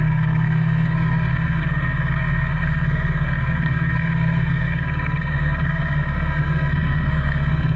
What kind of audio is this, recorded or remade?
remade